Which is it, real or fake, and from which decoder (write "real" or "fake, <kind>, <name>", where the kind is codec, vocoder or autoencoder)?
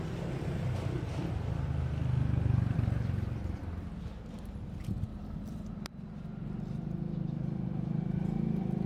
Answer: real